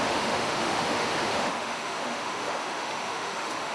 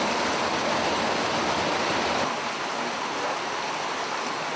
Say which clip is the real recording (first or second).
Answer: second